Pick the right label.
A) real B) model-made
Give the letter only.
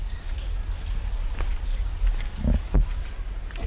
A